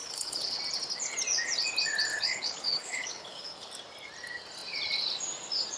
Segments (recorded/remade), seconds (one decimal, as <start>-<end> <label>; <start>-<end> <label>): 0.0-0.6 remade; 0.6-2.1 recorded; 2.1-3.7 remade; 3.7-5.8 recorded

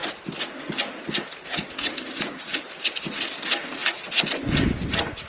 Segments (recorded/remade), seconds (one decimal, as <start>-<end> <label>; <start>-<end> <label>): 0.0-1.6 recorded; 1.6-2.5 remade; 2.5-5.3 recorded

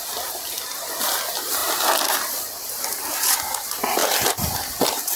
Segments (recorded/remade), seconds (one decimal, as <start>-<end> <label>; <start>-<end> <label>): 0.0-5.2 recorded

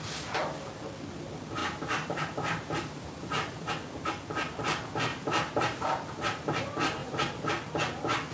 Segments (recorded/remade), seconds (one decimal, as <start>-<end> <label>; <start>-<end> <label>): 0.0-1.6 recorded; 1.6-3.7 remade; 3.7-5.1 recorded; 5.1-6.6 remade; 6.6-7.0 recorded; 7.0-7.5 remade; 7.5-8.3 recorded

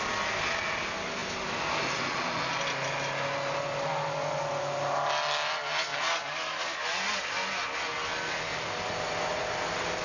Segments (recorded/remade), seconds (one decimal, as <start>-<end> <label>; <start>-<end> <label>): 0.0-1.2 recorded; 1.2-2.4 remade; 2.4-5.9 recorded; 5.9-6.5 remade; 6.5-10.0 recorded

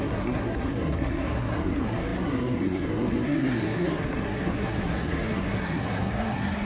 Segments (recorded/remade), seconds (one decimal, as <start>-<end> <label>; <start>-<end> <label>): 0.0-6.6 remade